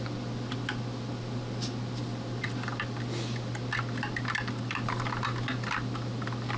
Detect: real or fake real